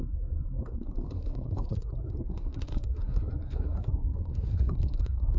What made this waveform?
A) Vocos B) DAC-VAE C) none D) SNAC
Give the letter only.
D